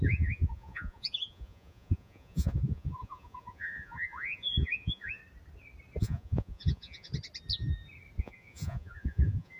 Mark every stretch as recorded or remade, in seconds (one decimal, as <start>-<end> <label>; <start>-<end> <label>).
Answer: 0.0-5.2 remade; 5.2-6.0 recorded; 6.0-7.1 remade; 7.1-8.2 recorded; 8.2-9.6 remade